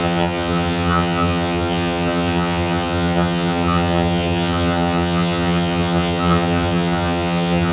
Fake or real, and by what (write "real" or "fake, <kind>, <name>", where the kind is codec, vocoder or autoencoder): fake, vocoder, HiFi-GAN